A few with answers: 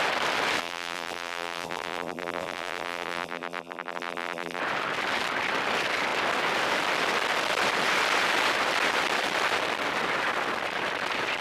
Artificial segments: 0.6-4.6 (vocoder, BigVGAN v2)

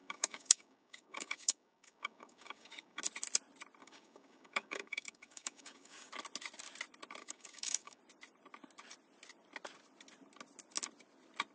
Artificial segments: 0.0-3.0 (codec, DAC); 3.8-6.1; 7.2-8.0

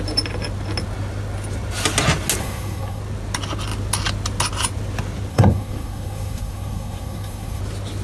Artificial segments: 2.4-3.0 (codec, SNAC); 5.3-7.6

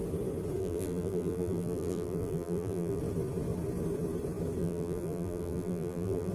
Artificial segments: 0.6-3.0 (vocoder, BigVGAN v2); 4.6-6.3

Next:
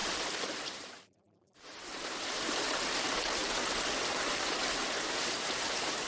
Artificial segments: 0.0-3.4 (vocoder, BigVGAN v2); 4.7-6.1

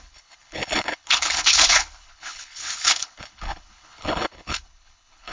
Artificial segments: 0.0-5.3 (codec, HILCodec)

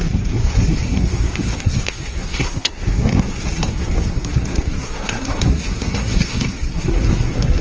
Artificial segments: 0.0-7.6 (codec, SNAC)